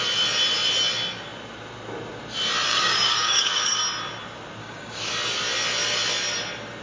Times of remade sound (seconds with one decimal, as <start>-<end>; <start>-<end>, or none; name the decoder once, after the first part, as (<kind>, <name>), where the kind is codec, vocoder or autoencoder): 2.7-3.8 (codec, DAC); 4.6-5.1